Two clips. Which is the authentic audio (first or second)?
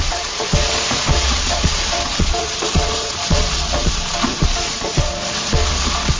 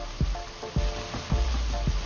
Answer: second